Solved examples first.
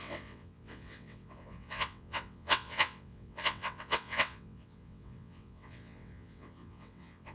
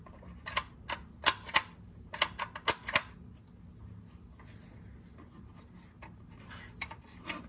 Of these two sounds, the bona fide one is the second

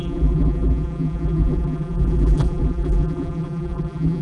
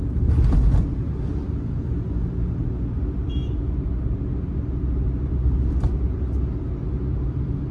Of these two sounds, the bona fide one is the second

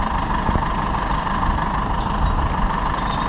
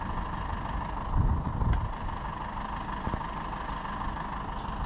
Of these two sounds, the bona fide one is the second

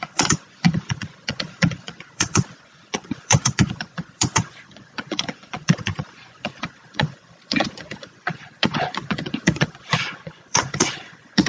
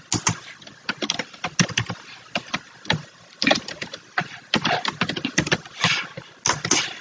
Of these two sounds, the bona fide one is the second